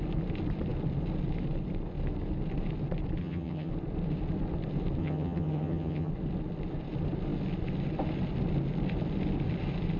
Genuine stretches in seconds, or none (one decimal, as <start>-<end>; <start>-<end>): 0.0-3.2; 3.7-5.0; 6.1-10.0